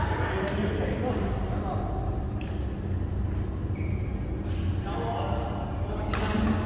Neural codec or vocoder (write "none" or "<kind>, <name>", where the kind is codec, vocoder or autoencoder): none